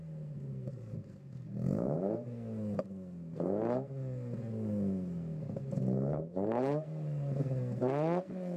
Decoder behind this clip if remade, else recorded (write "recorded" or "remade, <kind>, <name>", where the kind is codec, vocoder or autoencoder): remade, codec, SNAC